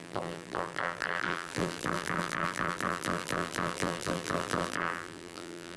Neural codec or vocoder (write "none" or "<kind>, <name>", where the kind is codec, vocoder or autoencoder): vocoder, BigVGAN v2